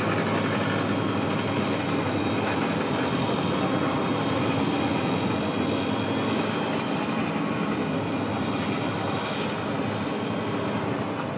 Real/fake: real